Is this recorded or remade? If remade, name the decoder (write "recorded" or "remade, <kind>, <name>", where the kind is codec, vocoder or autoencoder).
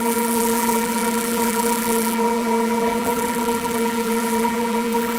remade, vocoder, BigVGAN v2